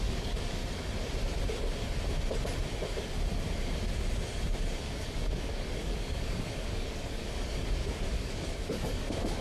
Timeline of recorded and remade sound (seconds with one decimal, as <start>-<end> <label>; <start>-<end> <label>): 0.0-0.6 remade; 0.6-4.8 recorded; 4.8-9.4 remade